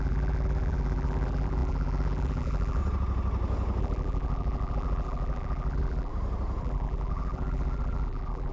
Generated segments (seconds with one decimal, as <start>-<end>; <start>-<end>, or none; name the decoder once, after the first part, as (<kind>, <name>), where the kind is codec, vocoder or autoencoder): 0.0-2.8 (vocoder, BigVGAN v2); 3.8-6.1; 6.6-8.5